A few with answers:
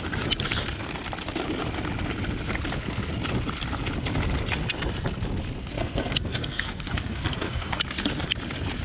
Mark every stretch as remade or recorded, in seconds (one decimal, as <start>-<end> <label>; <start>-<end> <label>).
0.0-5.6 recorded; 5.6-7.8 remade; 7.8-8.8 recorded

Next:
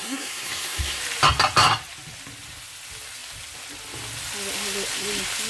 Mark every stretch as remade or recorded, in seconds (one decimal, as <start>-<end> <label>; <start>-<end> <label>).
0.0-1.0 remade; 1.0-5.5 recorded

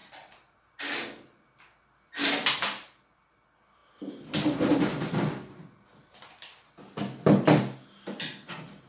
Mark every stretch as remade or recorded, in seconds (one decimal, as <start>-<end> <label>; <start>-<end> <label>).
0.0-8.9 recorded

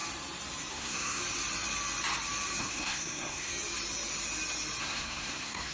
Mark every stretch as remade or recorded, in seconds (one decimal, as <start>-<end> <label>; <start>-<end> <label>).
0.0-0.7 recorded; 0.7-1.2 remade; 1.2-2.6 recorded; 2.6-3.5 remade; 3.5-4.8 recorded; 4.8-5.7 remade

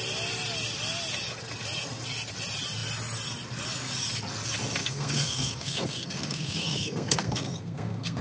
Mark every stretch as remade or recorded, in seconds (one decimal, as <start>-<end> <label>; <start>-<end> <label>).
0.0-4.8 recorded; 4.8-8.2 remade

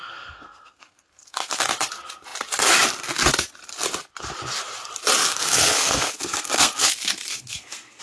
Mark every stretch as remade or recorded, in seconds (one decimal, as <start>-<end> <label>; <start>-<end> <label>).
0.0-1.7 remade; 1.7-5.2 recorded; 5.2-8.0 remade